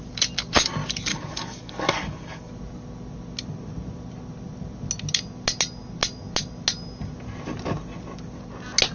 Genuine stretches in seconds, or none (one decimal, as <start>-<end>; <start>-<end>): 0.0-1.1; 2.5-8.9